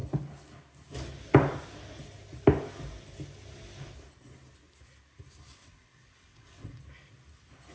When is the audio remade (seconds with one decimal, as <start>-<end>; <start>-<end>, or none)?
5.5-6.8